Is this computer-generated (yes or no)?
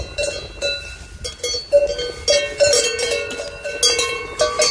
no